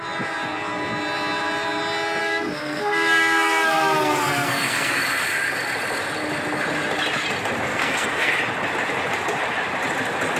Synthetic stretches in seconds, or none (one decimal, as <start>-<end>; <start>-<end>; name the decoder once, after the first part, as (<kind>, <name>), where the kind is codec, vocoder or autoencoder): 2.2-5.0 (codec, SNAC); 7.7-8.3